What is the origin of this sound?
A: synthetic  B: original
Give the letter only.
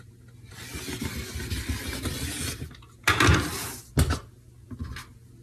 B